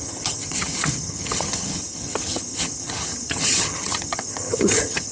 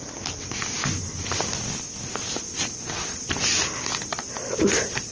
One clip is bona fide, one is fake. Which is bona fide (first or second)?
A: second